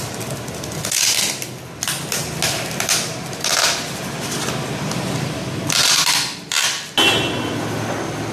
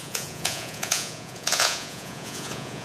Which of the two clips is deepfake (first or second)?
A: second